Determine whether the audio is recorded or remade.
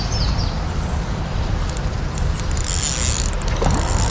recorded